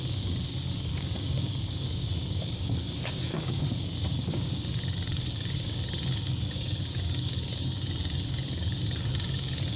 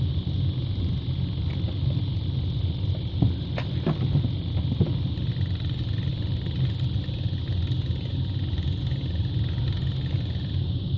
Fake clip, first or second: first